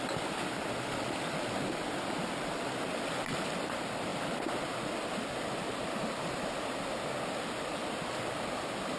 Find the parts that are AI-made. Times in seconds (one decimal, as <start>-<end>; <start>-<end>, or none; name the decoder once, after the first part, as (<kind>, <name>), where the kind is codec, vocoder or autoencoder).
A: none